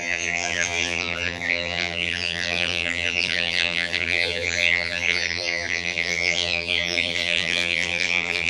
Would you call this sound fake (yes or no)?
yes